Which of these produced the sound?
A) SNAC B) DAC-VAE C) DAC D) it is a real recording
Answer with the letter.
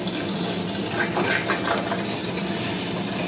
D